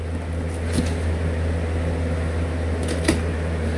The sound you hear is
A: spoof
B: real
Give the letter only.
B